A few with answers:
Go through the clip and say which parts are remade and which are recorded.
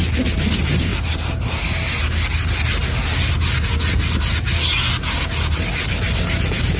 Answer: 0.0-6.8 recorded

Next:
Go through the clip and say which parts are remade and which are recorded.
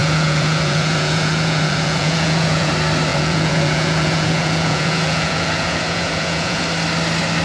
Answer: 0.0-2.7 remade; 2.7-3.1 recorded; 3.1-6.6 remade; 6.6-7.4 recorded